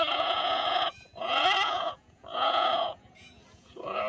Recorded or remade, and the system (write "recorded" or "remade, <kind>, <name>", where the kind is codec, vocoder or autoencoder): remade, vocoder, Vocos